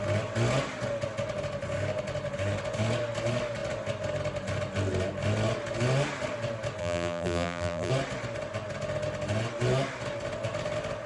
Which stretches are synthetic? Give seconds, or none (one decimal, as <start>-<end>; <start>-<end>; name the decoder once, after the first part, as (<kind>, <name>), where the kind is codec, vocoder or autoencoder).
6.8-7.9 (vocoder, BigVGAN v2)